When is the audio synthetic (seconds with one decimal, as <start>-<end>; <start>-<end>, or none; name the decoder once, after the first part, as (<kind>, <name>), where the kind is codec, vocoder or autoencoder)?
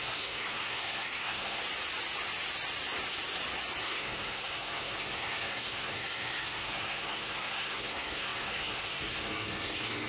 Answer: 0.0-1.6 (codec, SNAC); 3.8-10.1